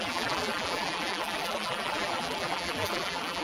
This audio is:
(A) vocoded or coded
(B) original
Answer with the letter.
A